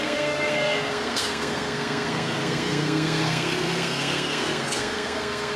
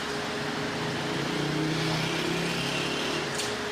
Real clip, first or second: second